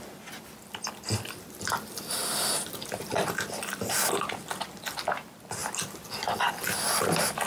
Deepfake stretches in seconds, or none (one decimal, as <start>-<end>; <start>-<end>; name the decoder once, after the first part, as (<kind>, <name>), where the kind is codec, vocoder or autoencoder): none